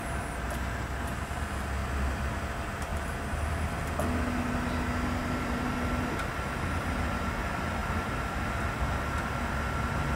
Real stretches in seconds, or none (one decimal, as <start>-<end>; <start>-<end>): 0.0-1.8; 2.3-2.9; 3.7-5.2; 6.3-7.8; 8.5-10.2